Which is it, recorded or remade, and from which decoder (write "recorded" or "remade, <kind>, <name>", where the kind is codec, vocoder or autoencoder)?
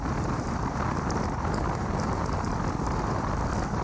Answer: recorded